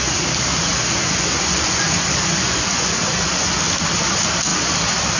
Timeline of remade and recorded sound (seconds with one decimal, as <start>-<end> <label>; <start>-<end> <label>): 0.0-0.5 recorded; 0.5-3.6 remade; 3.6-5.2 recorded